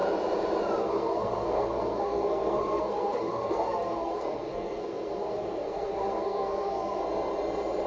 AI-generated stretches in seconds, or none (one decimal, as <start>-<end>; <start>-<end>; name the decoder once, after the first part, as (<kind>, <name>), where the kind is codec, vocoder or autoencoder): 0.8-7.0 (codec, SNAC)